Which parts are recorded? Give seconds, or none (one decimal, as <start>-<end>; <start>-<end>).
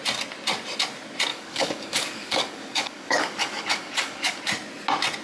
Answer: 0.0-1.3; 4.4-5.2